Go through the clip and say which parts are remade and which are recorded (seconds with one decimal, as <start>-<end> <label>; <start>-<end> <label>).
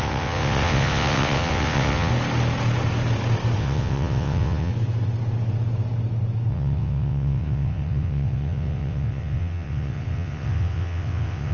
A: 0.0-2.1 remade; 2.1-3.6 recorded; 3.6-4.7 remade; 4.7-6.5 recorded; 6.5-11.5 remade